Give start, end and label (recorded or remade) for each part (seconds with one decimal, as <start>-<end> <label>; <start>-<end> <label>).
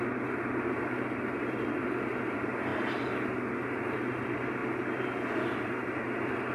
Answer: 0.0-6.5 recorded